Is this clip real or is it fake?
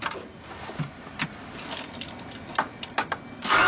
real